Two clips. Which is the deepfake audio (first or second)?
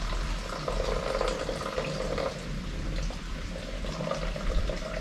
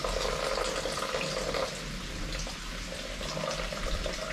first